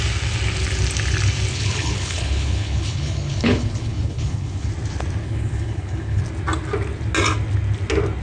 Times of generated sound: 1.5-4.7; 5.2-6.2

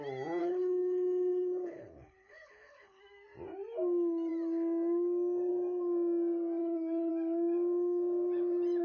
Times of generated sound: 0.4-3.0; 6.6-7.1

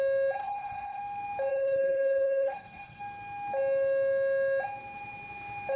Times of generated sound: 0.4-1.0; 1.5-3.0